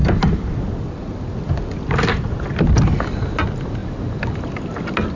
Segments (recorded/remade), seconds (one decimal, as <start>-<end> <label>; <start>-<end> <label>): 0.0-5.2 recorded